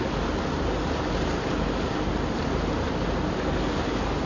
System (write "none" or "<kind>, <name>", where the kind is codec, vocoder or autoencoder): none